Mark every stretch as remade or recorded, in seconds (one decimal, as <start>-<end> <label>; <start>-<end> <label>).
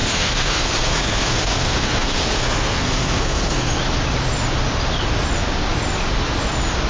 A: 0.0-3.7 remade; 3.7-6.9 recorded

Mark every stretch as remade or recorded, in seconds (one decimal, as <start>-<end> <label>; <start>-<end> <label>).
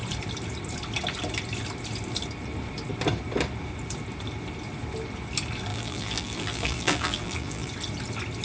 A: 0.0-5.7 recorded; 5.7-7.7 remade; 7.7-8.4 recorded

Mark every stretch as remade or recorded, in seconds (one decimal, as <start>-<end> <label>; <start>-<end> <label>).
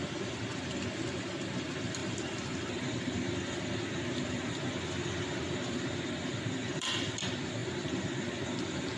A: 0.0-2.0 recorded; 2.0-7.1 remade; 7.1-7.6 recorded; 7.6-8.3 remade; 8.3-9.0 recorded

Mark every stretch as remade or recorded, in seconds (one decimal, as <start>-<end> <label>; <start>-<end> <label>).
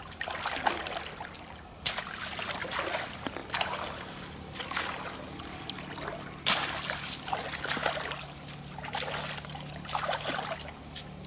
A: 0.0-11.3 recorded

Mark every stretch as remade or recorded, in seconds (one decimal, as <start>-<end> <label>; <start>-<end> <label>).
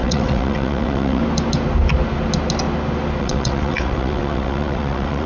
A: 0.0-1.2 remade; 1.2-3.2 recorded; 3.2-5.3 remade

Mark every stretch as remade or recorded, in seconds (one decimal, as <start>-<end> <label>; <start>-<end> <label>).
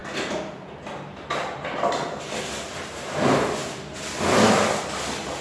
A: 0.0-5.4 recorded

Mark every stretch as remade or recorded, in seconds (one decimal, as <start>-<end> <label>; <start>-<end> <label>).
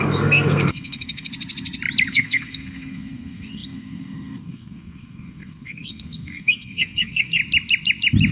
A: 0.0-1.3 remade; 1.3-2.1 recorded; 2.1-7.4 remade; 7.4-8.3 recorded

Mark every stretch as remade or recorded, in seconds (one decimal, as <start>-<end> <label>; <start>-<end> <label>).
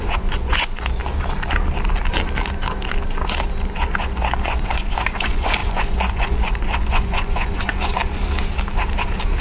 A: 0.0-1.0 remade; 1.0-4.0 recorded; 4.0-8.0 remade; 8.0-9.4 recorded